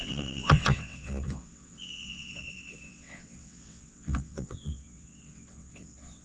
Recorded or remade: remade